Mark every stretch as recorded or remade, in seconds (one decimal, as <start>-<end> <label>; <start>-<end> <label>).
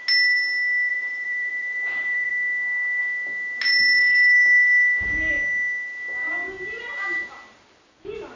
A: 0.0-0.9 recorded; 0.9-2.3 remade; 2.3-8.4 recorded